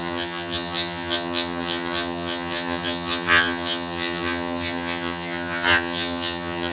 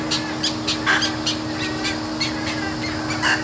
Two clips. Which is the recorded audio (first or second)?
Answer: second